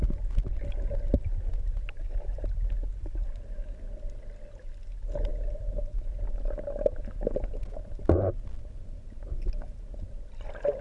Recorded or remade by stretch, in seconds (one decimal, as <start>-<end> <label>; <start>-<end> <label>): 0.0-10.8 recorded